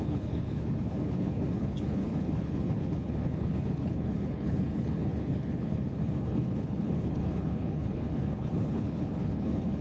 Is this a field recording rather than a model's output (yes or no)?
no